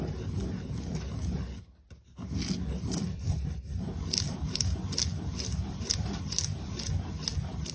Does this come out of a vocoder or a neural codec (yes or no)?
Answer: no